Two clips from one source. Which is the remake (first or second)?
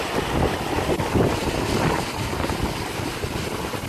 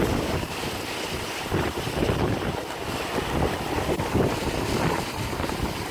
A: second